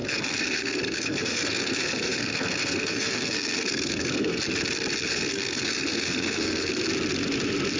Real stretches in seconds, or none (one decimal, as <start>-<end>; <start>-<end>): 4.4-5.1; 6.7-7.8